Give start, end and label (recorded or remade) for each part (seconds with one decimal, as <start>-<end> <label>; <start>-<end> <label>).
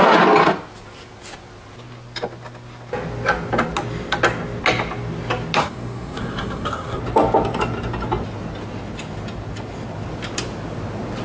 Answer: 0.0-5.6 recorded; 5.6-7.0 remade; 7.0-11.2 recorded